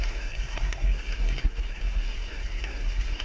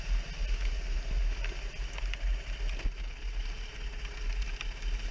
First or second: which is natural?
second